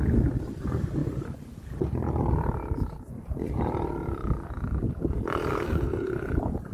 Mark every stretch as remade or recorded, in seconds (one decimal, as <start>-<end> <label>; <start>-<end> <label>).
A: 0.0-5.5 recorded; 5.5-6.1 remade; 6.1-6.7 recorded

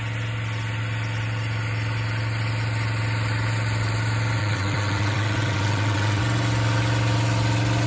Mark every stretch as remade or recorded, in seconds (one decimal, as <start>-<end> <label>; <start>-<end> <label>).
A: 0.0-4.4 recorded; 4.4-6.2 remade; 6.2-7.9 recorded

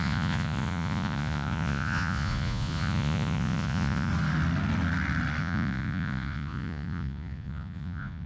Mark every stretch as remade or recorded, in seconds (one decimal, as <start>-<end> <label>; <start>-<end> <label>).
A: 0.0-4.1 remade; 4.1-5.4 recorded; 5.4-8.3 remade

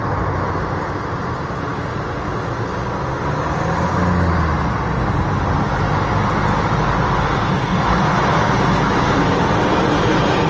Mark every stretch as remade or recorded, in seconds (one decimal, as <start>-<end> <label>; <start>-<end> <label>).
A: 0.0-10.5 recorded